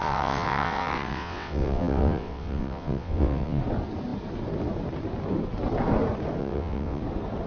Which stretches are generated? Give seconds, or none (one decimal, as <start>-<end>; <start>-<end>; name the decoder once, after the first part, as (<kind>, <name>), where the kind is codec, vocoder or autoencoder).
0.0-3.6 (vocoder, WaveNeXt); 6.4-7.0